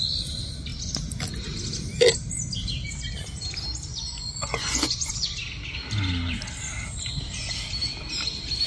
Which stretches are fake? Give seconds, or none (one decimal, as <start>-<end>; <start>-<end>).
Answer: 3.9-5.3